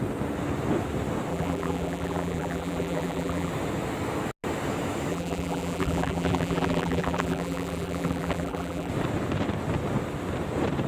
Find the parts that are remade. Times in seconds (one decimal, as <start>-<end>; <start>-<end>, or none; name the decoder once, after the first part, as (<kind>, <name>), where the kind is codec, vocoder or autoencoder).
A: 1.3-3.5 (vocoder, BigVGAN v2); 5.1-8.9